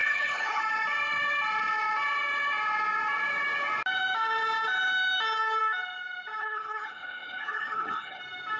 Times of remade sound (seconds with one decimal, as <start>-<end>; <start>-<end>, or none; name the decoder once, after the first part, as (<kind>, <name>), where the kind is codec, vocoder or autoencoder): 0.0-0.6 (codec, HILCodec); 6.4-8.2